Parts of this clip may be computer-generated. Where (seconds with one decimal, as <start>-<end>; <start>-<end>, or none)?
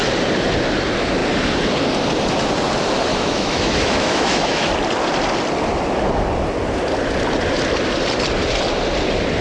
3.1-4.7